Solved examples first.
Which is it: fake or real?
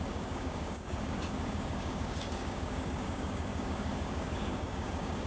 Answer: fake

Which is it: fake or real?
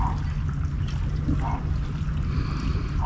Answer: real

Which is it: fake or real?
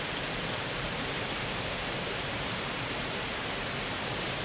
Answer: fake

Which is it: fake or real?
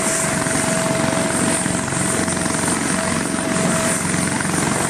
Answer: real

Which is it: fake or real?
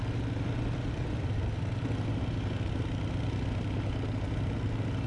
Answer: real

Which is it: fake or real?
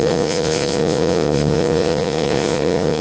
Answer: fake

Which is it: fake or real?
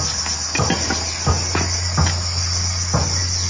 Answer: real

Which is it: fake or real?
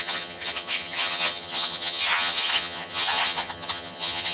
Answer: fake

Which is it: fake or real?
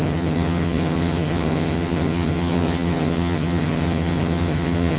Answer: fake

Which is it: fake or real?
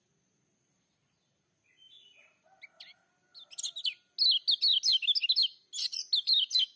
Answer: real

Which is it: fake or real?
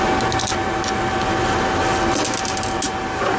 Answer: real